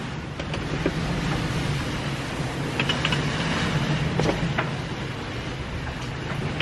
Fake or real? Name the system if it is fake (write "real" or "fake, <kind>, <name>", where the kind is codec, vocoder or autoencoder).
real